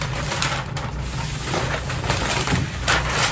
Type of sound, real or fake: real